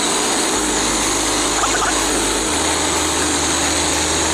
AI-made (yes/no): no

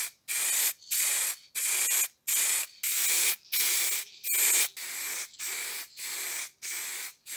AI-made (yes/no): no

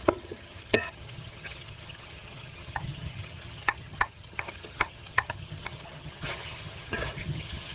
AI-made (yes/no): yes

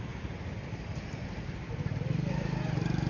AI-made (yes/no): no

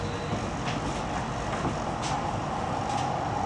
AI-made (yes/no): no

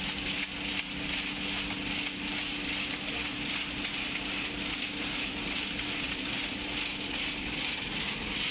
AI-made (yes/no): no